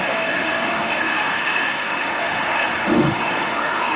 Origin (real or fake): fake